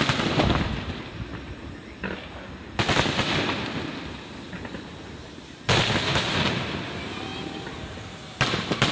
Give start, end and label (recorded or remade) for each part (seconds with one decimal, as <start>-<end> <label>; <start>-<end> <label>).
0.0-8.9 recorded